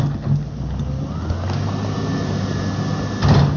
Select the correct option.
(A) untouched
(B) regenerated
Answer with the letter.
A